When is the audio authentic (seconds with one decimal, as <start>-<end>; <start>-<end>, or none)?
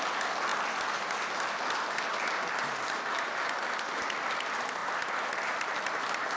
0.0-6.4